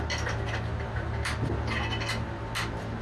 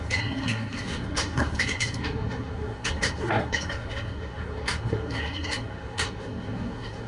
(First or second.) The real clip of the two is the first